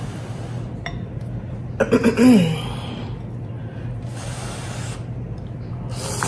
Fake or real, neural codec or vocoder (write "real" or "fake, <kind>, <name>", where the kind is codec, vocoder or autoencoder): real